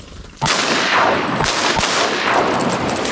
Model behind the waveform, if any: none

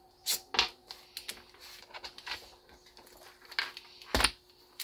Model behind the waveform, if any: none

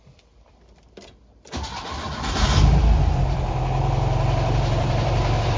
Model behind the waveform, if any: vocoder, BigVGAN v2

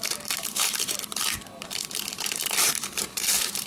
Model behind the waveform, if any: vocoder, BigVGAN v2